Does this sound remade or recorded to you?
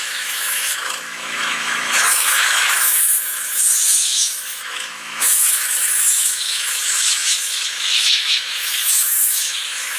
remade